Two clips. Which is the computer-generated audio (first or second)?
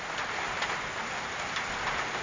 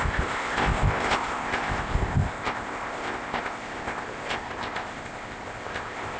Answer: second